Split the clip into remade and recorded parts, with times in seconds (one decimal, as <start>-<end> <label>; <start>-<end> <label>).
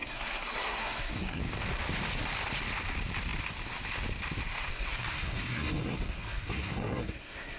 0.0-1.4 remade; 1.4-4.7 recorded; 4.7-7.6 remade